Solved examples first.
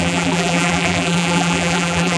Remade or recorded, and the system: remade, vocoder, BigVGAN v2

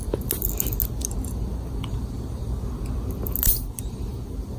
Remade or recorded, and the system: recorded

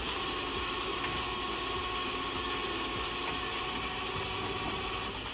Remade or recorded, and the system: recorded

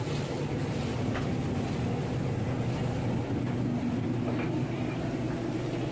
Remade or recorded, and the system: recorded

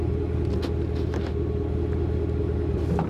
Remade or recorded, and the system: recorded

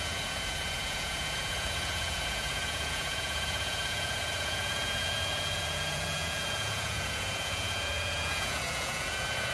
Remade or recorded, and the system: remade, vocoder, Vocos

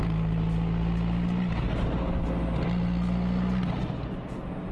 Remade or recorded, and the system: recorded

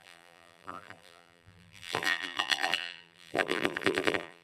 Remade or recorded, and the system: remade, vocoder, BigVGAN v2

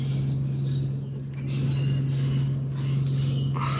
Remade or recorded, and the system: recorded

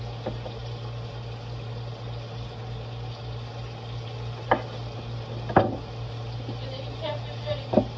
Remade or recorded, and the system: recorded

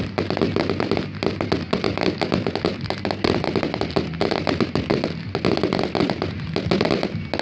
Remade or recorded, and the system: recorded